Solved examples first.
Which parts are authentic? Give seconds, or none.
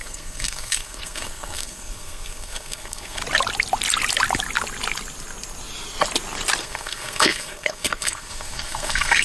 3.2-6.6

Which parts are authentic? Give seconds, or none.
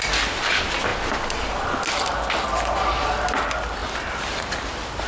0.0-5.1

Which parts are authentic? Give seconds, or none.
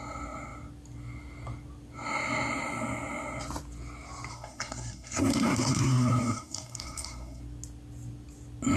0.0-4.3; 7.4-8.8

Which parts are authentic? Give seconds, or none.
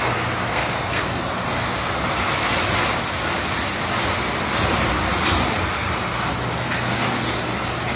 0.0-0.5; 1.2-8.0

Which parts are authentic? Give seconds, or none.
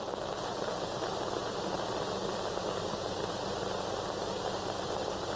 0.0-5.4